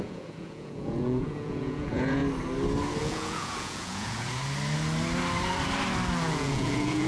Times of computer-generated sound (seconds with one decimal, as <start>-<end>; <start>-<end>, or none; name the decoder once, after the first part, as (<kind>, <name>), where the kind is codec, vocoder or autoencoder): 0.0-2.2 (vocoder, Vocos); 3.0-4.4; 6.3-7.1